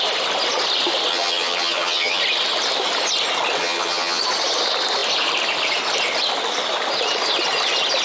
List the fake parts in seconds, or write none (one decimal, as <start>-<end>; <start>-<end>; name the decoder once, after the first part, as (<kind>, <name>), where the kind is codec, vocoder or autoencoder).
1.1-2.2 (vocoder, HiFi-GAN); 3.6-4.2